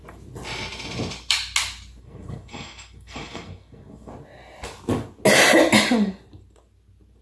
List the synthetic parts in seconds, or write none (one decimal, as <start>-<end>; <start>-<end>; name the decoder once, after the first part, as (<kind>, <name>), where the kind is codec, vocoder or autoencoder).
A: 2.0-4.1 (codec, SNAC)